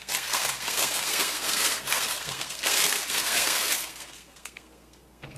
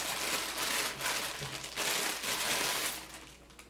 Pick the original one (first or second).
second